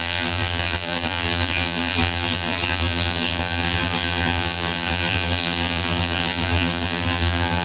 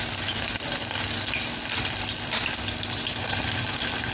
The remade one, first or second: first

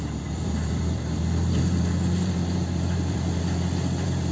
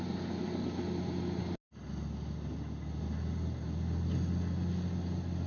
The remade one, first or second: first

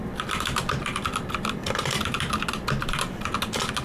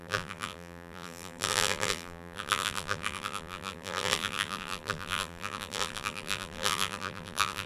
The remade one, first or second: second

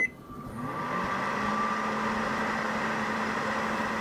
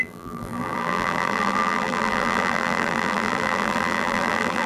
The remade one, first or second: second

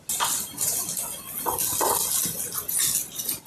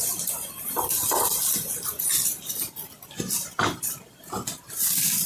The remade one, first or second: second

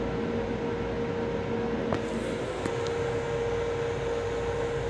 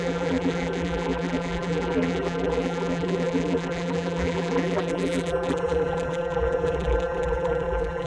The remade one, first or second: second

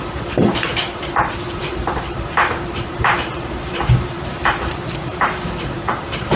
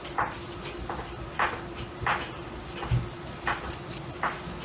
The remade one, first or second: first